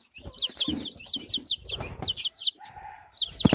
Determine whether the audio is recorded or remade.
recorded